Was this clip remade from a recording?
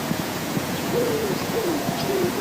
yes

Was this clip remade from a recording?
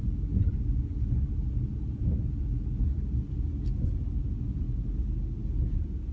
no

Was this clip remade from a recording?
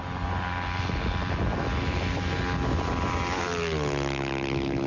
no